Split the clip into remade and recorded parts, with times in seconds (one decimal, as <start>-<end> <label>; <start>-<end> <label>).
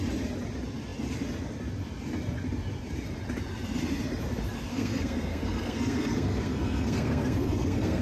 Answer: 0.0-4.7 recorded; 4.7-8.0 remade